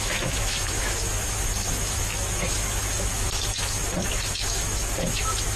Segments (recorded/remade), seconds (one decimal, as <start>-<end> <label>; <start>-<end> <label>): 0.0-5.6 remade